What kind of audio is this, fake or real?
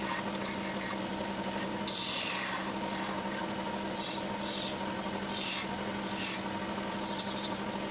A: real